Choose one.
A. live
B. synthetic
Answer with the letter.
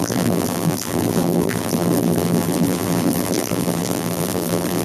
B